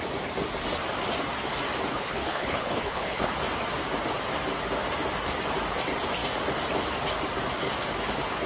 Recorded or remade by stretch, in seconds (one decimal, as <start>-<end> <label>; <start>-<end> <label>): 0.0-1.9 recorded; 1.9-3.3 remade; 3.3-8.5 recorded